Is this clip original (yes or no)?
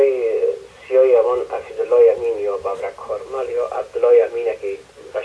yes